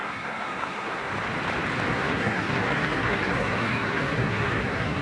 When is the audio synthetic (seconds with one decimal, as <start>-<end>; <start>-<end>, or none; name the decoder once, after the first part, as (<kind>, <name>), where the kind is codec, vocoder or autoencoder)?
0.0-1.1 (codec, SNAC); 1.9-5.0